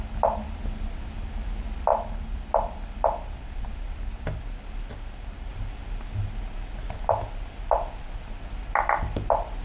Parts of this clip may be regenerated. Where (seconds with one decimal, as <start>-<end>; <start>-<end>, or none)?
none